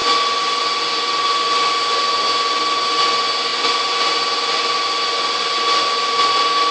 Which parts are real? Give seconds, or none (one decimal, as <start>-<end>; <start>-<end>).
0.0-6.7